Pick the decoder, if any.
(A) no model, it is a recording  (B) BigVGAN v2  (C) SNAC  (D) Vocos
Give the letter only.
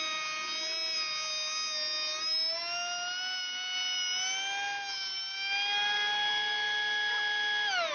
A